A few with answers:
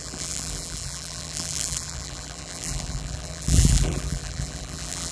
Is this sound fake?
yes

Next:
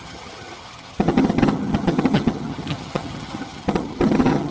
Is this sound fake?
yes